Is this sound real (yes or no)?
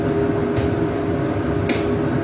yes